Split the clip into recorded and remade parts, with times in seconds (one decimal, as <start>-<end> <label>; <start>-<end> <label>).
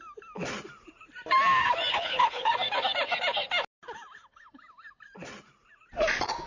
0.0-1.9 recorded; 1.9-2.5 remade; 2.5-6.5 recorded